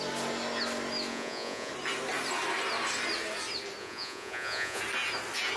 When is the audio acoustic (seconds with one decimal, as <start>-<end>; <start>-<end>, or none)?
0.0-1.1; 1.7-3.8; 4.8-5.6